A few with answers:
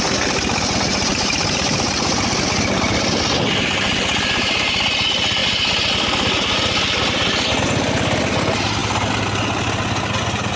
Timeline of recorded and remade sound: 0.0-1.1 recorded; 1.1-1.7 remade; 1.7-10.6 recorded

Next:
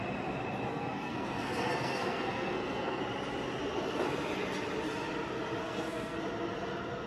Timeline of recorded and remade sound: 0.0-0.7 recorded; 0.7-3.0 remade; 3.0-5.6 recorded; 5.6-6.2 remade; 6.2-7.1 recorded

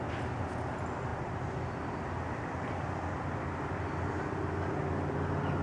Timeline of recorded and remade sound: 0.0-1.1 recorded; 1.1-1.6 remade; 1.6-5.6 recorded